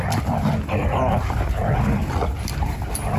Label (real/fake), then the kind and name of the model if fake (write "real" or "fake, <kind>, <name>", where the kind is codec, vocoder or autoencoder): real